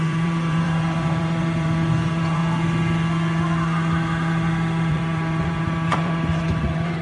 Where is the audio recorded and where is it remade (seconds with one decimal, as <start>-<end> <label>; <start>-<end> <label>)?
0.0-2.4 remade; 2.4-4.9 recorded; 4.9-7.0 remade